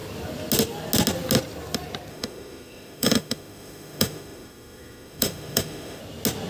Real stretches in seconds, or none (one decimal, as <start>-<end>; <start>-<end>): 0.0-2.1; 6.0-6.5